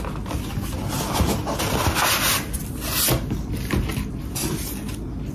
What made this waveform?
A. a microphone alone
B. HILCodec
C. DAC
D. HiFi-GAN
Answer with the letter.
A